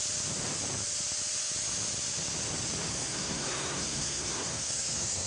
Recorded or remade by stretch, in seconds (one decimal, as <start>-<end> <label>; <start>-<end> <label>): 0.0-2.9 recorded; 2.9-5.3 remade